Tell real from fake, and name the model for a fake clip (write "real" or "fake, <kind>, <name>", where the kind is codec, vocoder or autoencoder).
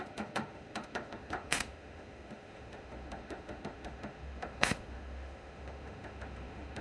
fake, autoencoder, DAC-VAE